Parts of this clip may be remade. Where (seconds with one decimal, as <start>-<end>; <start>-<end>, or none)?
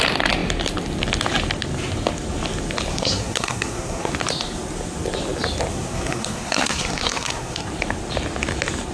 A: 2.9-4.1; 5.7-7.7